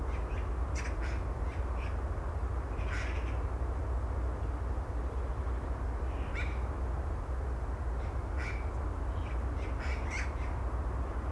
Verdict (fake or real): real